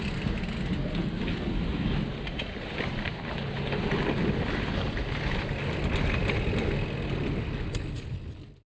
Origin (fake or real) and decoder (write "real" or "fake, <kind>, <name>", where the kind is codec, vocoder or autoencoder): real